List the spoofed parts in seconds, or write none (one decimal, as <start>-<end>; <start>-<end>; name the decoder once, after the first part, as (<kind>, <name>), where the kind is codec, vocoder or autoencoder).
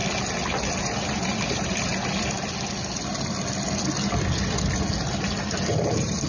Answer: 0.8-1.9 (vocoder, BigVGAN v2); 5.7-6.3